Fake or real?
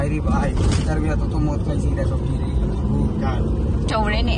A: real